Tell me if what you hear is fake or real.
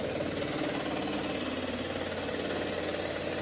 real